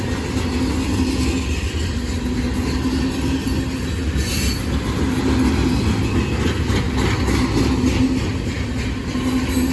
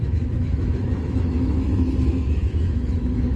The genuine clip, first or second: first